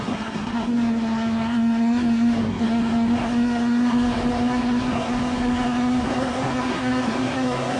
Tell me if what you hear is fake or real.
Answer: fake